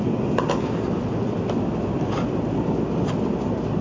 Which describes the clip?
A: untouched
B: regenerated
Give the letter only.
A